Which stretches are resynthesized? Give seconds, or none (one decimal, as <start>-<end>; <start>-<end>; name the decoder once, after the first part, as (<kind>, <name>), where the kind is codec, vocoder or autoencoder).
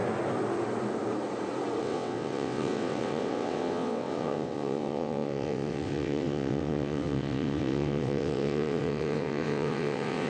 1.8-10.3 (vocoder, WaveNeXt)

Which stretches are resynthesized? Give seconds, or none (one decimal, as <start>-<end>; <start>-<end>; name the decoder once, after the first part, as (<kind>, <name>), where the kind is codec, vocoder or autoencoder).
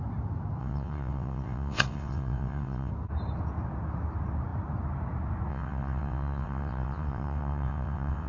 0.6-2.9 (vocoder, WaveNeXt); 5.5-8.3